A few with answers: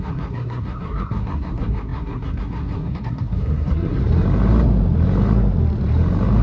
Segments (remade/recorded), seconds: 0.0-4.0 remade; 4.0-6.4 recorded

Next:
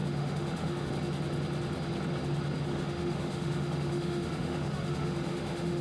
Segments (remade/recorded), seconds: 0.0-0.9 remade; 0.9-2.7 recorded; 2.7-5.8 remade

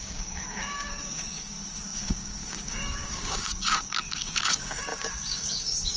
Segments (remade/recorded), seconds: 0.0-6.0 remade

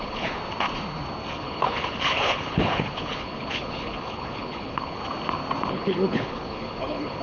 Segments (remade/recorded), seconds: 0.0-0.4 remade; 0.4-1.3 recorded; 1.3-5.0 remade; 5.0-5.7 recorded; 5.7-7.2 remade

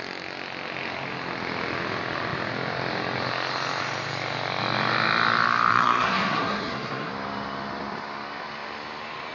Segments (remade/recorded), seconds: 0.0-5.7 recorded; 5.7-7.1 remade; 7.1-9.3 recorded

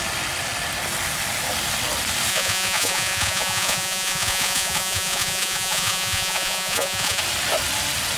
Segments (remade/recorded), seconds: 0.0-2.3 recorded; 2.3-7.2 remade; 7.2-8.2 recorded

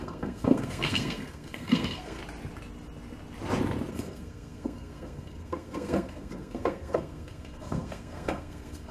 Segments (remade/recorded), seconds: 0.0-2.2 remade; 2.2-3.9 recorded; 3.9-8.9 remade